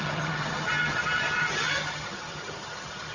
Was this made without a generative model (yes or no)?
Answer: no